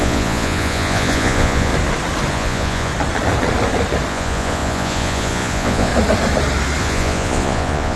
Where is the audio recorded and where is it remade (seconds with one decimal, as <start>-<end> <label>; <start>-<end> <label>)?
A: 0.0-1.7 remade; 1.7-2.3 recorded; 2.3-2.9 remade; 2.9-4.1 recorded; 4.1-5.9 remade; 5.9-6.8 recorded; 6.8-8.0 remade